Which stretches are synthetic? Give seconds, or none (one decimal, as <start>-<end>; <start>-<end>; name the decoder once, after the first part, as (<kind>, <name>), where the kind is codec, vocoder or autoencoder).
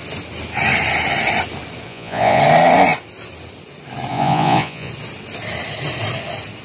1.9-2.4 (vocoder, Vocos); 4.1-4.9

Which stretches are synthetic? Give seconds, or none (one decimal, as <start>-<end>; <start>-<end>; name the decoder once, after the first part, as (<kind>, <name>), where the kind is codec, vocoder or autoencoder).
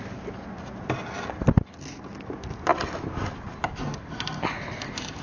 none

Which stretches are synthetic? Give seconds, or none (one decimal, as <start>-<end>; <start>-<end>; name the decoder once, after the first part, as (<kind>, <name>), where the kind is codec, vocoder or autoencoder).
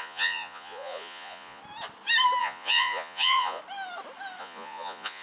0.0-1.6 (vocoder, Vocos); 2.4-3.6; 4.4-5.2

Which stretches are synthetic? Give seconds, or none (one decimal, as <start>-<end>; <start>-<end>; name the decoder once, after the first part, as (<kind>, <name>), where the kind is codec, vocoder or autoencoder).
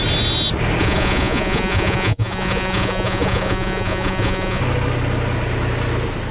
0.8-4.6 (vocoder, Vocos)